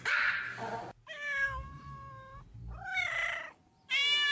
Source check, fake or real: real